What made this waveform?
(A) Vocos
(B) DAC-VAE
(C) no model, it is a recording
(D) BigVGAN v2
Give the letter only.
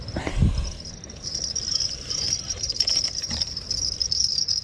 C